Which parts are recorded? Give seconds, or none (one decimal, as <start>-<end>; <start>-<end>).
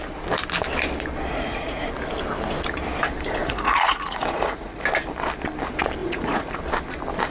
0.0-1.3; 1.9-3.4; 4.8-6.0; 6.6-7.3